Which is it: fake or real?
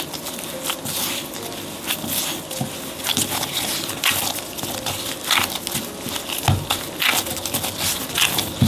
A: real